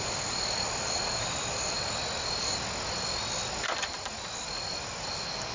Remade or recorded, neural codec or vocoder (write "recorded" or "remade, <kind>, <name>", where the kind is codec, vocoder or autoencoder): recorded